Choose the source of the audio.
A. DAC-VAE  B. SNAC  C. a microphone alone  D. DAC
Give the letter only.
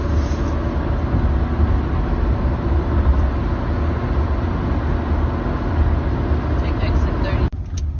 C